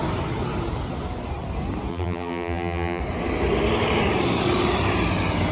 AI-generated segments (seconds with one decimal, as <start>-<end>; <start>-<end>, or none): 1.9-3.0